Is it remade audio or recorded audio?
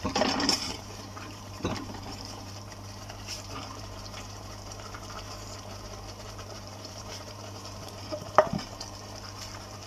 remade